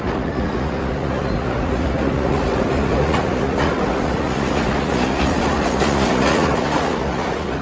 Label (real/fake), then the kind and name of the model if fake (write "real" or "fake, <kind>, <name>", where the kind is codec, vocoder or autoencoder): fake, vocoder, Vocos